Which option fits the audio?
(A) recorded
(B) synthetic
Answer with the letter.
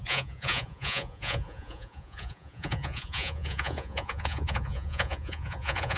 B